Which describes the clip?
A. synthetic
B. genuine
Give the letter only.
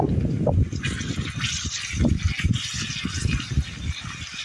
B